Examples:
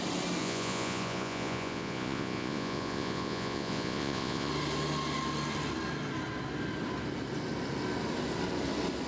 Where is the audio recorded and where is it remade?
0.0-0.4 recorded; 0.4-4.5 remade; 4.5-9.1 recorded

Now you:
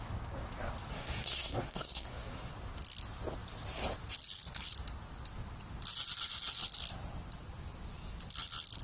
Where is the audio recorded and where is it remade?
0.0-0.9 recorded; 0.9-2.5 remade; 2.5-8.8 recorded

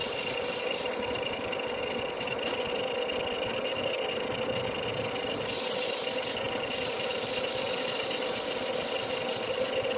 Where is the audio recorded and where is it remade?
0.0-10.0 recorded